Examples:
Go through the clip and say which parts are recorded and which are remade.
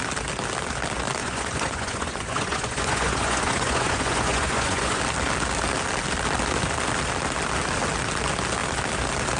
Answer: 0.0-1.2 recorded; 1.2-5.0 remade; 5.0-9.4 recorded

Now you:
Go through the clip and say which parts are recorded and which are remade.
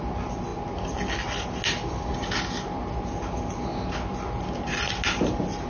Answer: 0.0-5.7 recorded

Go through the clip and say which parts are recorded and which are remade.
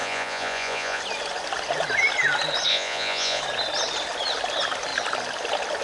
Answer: 0.0-1.0 remade; 1.0-2.7 recorded; 2.7-3.4 remade; 3.4-5.8 recorded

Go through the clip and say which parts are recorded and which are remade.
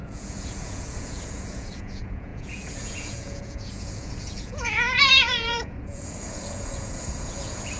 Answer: 0.0-7.8 remade